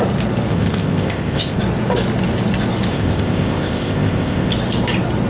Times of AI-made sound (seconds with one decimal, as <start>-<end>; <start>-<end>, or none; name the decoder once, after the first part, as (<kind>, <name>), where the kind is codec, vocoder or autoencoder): 0.5-1.6 (codec, ZipCodec); 2.9-4.5